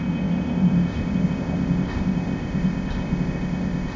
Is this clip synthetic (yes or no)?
yes